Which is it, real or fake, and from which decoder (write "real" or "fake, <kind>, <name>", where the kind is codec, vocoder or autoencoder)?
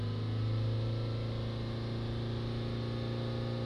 real